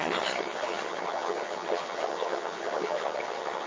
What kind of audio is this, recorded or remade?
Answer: remade